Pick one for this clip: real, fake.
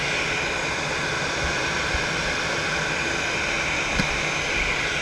real